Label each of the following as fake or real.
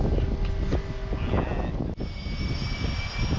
real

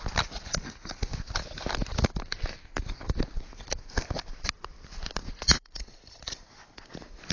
real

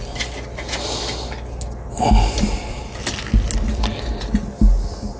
real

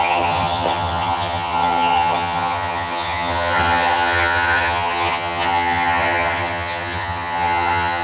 fake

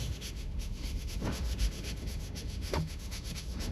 fake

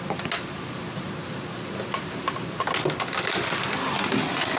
real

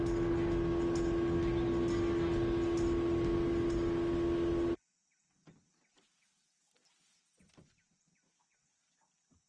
real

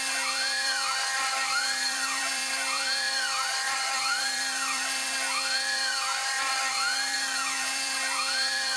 fake